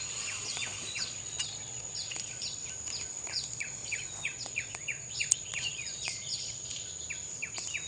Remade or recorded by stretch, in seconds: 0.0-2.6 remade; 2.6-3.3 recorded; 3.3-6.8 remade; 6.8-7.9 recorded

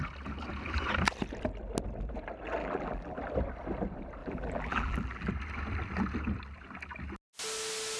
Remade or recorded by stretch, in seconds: 0.0-2.6 recorded; 2.6-3.2 remade; 3.2-4.2 recorded; 4.2-5.3 remade; 5.3-8.0 recorded

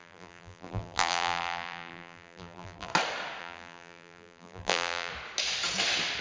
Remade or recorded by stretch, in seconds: 0.0-2.9 remade; 2.9-3.4 recorded; 3.4-5.1 remade; 5.1-6.2 recorded

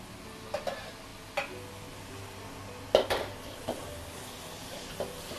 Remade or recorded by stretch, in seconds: 0.0-5.4 recorded

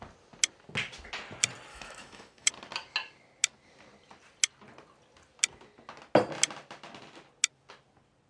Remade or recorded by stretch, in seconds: 0.0-1.7 recorded; 1.7-2.5 remade; 2.5-8.3 recorded

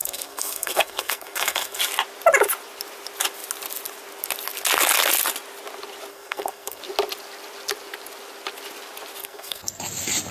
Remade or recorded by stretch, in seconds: 0.0-1.8 remade; 1.8-6.1 recorded; 6.1-6.8 remade; 6.8-9.2 recorded; 9.2-9.8 remade; 9.8-10.3 recorded

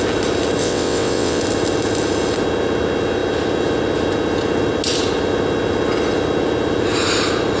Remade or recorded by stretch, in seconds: 0.0-0.6 recorded; 0.6-1.4 remade; 1.4-7.6 recorded

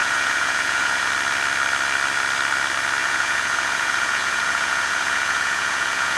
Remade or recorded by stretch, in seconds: 0.0-1.1 remade; 1.1-3.0 recorded; 3.0-6.2 remade